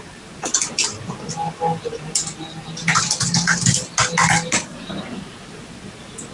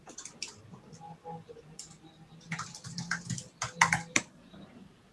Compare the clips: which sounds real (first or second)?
first